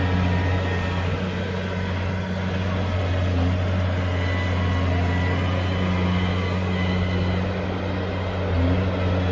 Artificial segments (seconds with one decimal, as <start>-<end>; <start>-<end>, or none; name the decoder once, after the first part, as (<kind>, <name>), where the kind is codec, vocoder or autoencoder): none